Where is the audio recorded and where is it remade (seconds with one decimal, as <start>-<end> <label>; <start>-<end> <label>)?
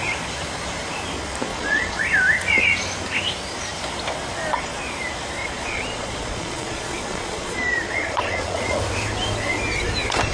0.0-1.5 recorded; 1.5-2.0 remade; 2.0-5.4 recorded; 5.4-8.8 remade; 8.8-10.3 recorded